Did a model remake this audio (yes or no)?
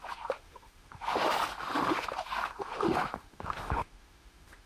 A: yes